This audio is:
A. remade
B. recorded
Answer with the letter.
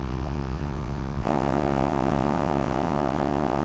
A